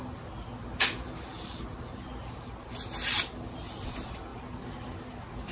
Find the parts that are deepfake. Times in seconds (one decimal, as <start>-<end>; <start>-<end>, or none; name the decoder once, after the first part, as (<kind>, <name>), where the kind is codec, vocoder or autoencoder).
none